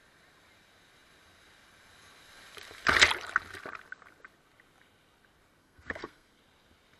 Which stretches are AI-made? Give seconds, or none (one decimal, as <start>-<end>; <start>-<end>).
5.6-6.4